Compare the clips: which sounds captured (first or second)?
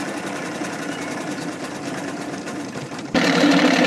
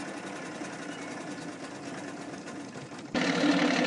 second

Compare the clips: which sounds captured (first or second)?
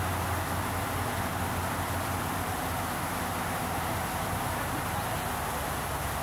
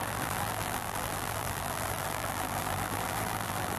first